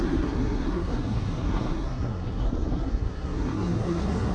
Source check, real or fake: fake